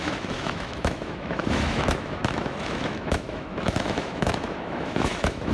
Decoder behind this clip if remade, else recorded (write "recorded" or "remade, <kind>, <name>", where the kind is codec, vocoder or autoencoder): remade, autoencoder, DAC-VAE